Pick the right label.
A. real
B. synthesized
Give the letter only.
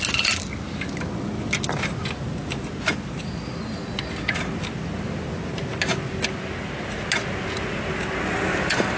A